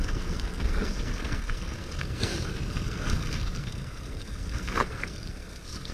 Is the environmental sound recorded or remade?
remade